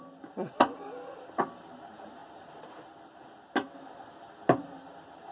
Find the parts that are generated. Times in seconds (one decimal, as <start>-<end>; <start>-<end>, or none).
none